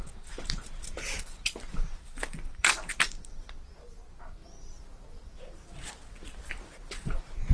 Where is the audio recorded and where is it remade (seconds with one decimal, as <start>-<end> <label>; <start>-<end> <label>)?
0.0-4.4 remade; 4.4-6.9 recorded; 6.9-7.5 remade